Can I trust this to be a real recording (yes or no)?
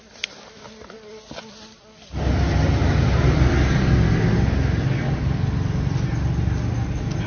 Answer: yes